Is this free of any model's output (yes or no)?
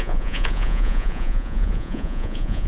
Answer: no